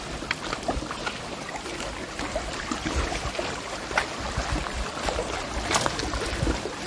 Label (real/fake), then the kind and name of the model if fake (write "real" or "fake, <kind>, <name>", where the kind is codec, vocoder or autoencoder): real